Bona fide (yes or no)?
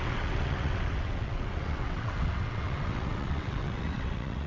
no